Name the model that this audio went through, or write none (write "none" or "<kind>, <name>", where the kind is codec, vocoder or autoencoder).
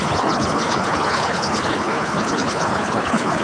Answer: codec, HILCodec